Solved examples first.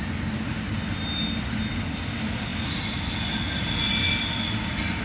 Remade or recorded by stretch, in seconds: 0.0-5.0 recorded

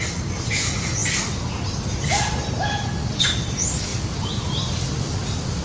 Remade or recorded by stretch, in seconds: 0.0-5.6 recorded